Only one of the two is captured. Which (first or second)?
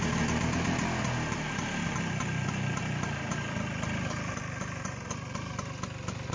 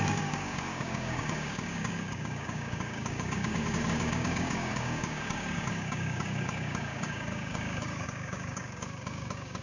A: first